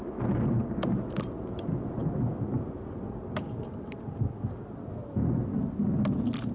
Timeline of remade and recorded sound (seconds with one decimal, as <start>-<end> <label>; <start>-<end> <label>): 0.0-6.5 recorded